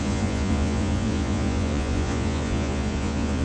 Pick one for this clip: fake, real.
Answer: fake